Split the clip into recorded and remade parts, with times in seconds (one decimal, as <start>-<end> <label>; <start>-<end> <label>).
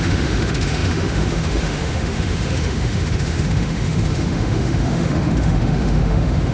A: 0.0-6.5 remade